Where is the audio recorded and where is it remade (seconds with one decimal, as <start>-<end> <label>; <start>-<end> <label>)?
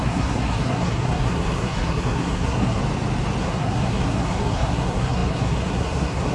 0.0-2.8 remade; 2.8-3.4 recorded; 3.4-6.3 remade